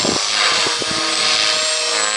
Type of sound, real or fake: real